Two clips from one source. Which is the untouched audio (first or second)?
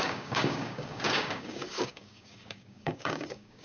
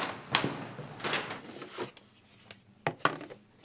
second